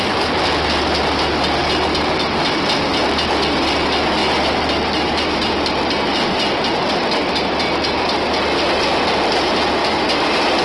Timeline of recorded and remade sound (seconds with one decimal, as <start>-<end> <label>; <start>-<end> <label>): 0.0-4.2 recorded; 4.2-6.9 remade; 6.9-9.8 recorded; 9.8-10.6 remade